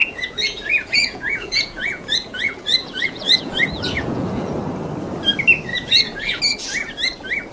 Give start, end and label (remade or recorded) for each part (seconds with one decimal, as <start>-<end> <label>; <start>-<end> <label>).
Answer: 0.0-4.5 remade; 4.5-5.7 recorded; 5.7-6.4 remade; 6.4-7.5 recorded